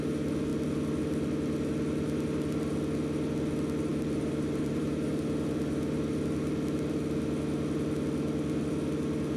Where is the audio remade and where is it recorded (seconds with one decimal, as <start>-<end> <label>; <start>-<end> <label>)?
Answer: 0.0-3.9 recorded; 3.9-5.1 remade; 5.1-9.4 recorded